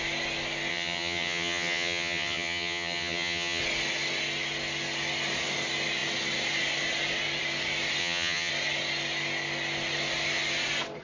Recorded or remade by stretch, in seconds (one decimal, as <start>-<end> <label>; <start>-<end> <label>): 0.0-0.7 recorded; 0.7-3.6 remade; 3.6-8.0 recorded; 8.0-8.5 remade; 8.5-11.0 recorded

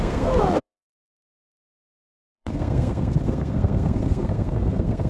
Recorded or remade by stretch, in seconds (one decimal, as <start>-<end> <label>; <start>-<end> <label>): 0.0-5.1 remade

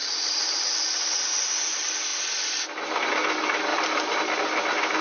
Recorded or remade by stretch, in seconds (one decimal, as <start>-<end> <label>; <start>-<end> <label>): 0.0-0.7 remade; 0.7-3.7 recorded; 3.7-4.2 remade; 4.2-5.0 recorded

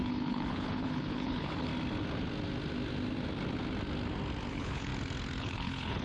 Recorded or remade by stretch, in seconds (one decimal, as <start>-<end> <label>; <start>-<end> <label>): 0.0-1.7 remade; 1.7-4.5 recorded; 4.5-4.9 remade; 4.9-5.4 recorded; 5.4-6.0 remade

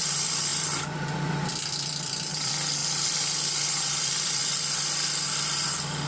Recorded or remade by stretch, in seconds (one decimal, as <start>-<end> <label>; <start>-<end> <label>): 0.0-2.8 remade; 2.8-3.8 recorded; 3.8-4.4 remade; 4.4-6.1 recorded